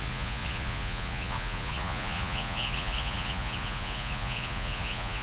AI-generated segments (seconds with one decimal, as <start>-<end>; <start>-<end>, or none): 0.0-5.2